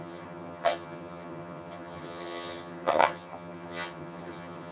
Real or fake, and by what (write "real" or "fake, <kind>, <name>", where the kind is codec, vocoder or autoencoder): fake, vocoder, HiFi-GAN